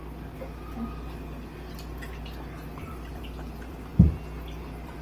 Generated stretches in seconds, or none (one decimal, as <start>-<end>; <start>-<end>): 2.8-3.9; 4.6-5.0